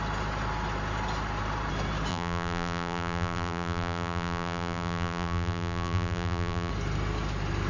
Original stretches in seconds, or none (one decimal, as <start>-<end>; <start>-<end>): 0.0-2.1; 6.7-7.7

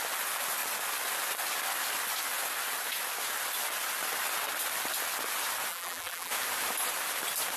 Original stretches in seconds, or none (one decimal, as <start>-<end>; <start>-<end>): 0.0-5.7; 6.3-7.6